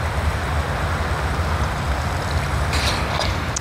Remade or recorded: recorded